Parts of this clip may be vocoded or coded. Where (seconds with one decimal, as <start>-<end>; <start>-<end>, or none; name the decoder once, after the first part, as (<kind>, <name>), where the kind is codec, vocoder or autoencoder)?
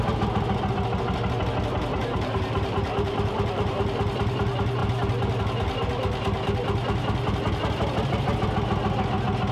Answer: 2.0-3.8 (vocoder, BigVGAN v2)